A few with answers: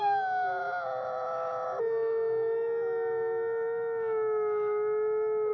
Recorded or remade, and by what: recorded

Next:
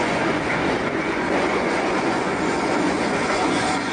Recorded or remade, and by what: remade, vocoder, Vocos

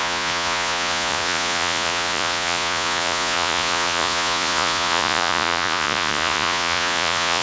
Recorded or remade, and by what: remade, vocoder, Vocos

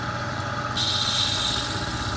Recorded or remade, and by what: recorded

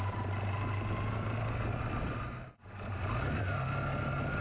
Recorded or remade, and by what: recorded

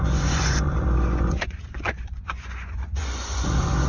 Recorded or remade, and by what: remade, vocoder, Vocos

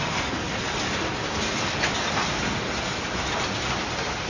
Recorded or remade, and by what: recorded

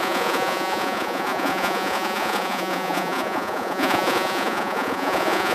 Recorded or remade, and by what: remade, vocoder, Vocos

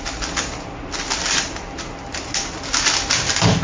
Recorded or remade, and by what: recorded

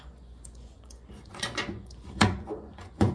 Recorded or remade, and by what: remade, vocoder, Vocos